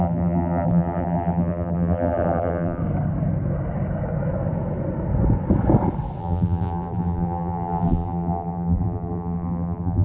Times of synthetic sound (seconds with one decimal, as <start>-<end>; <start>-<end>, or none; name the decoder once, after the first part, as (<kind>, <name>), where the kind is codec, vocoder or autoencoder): 0.0-2.8 (vocoder, BigVGAN v2); 6.2-10.0